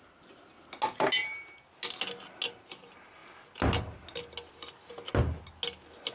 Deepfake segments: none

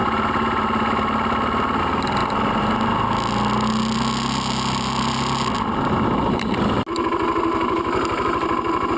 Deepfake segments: none

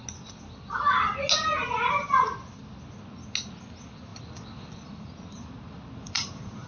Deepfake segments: 4.1-6.7 (vocoder, BigVGAN v2)

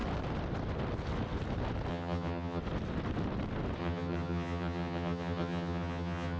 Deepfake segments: 1.9-2.6 (vocoder, HiFi-GAN); 3.8-6.4